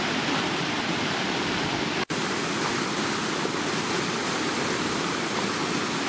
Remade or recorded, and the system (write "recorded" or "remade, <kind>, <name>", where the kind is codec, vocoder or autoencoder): recorded